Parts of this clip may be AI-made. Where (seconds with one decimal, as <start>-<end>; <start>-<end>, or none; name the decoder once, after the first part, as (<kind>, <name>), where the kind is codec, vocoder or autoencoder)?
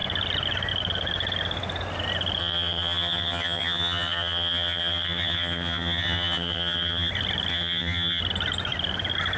2.4-7.1 (vocoder, HiFi-GAN); 7.5-8.2